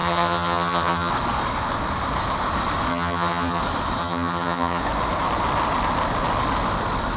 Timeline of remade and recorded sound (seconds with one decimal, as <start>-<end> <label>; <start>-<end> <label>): 0.0-1.1 remade; 1.1-2.9 recorded; 2.9-3.6 remade; 3.6-4.0 recorded; 4.0-4.8 remade; 4.8-7.2 recorded